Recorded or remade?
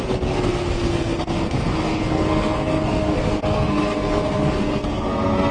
remade